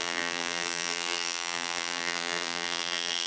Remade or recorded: remade